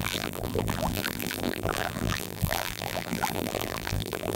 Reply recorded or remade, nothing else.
remade